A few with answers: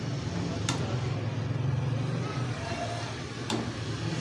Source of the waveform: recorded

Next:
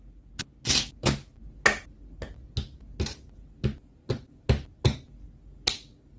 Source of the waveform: recorded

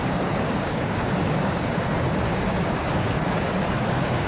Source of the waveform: remade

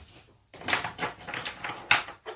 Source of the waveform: recorded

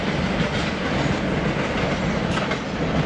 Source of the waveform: recorded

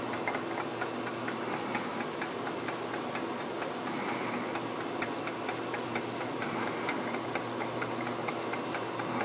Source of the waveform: recorded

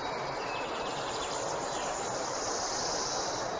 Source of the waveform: recorded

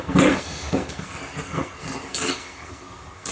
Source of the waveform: remade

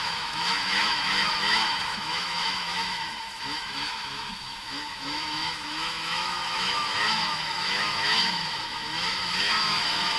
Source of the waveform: remade